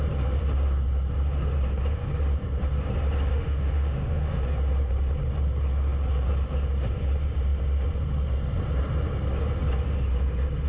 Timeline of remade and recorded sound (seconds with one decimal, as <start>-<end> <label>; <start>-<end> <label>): 0.0-3.3 recorded; 3.3-4.4 remade; 4.4-10.7 recorded